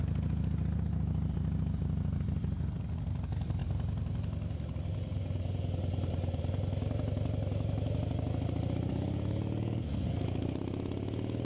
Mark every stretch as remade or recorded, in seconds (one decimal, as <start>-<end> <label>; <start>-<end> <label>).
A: 0.0-8.9 recorded; 8.9-10.6 remade; 10.6-11.4 recorded